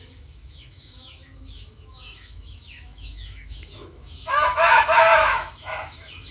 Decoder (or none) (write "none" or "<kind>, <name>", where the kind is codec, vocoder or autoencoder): autoencoder, DAC-VAE